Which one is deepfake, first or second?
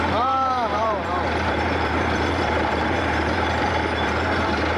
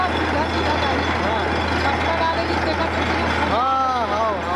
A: first